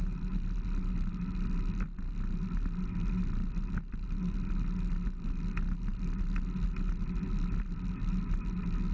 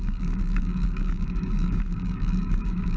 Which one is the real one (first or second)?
first